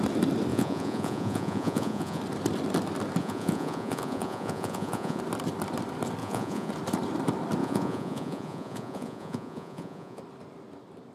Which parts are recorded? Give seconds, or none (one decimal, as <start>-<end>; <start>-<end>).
0.0-0.5; 2.2-3.2; 5.2-6.2; 6.7-7.6; 10.2-11.1